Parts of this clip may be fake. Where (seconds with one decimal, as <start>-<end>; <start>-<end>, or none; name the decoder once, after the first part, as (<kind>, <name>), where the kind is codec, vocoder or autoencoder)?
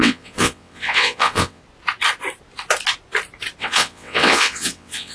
0.0-1.6 (vocoder, WaveNeXt); 3.6-5.1